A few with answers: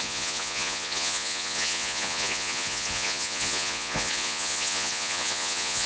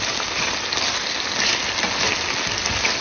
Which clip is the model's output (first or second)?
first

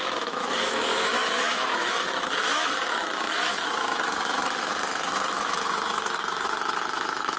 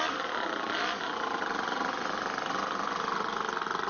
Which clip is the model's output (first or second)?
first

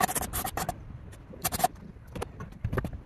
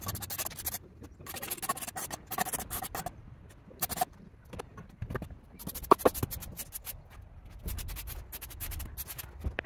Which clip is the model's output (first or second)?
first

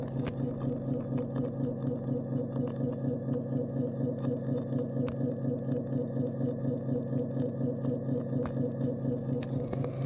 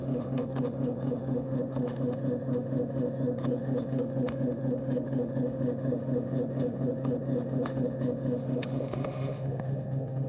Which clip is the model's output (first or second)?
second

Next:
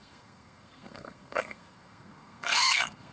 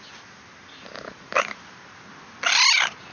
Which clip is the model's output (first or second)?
first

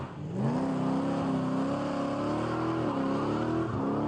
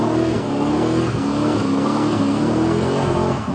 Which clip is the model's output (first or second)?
second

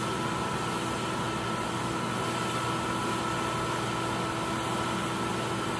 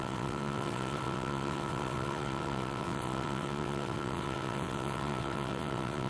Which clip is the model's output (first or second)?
second